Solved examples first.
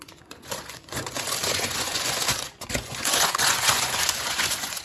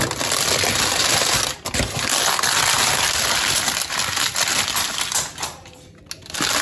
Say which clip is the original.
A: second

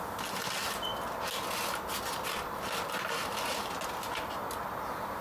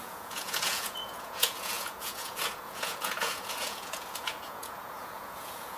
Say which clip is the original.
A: first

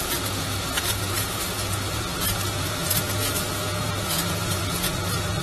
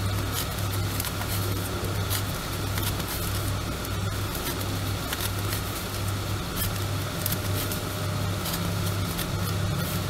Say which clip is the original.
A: second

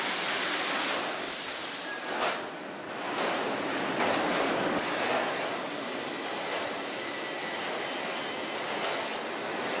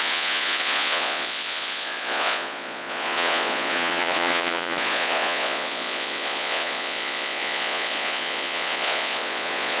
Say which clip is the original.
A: first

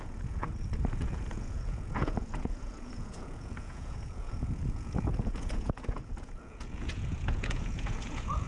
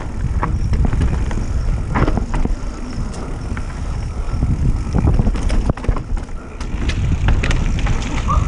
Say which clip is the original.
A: second